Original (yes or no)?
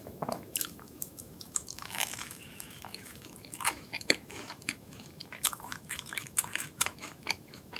no